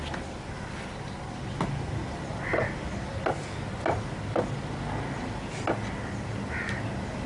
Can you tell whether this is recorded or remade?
recorded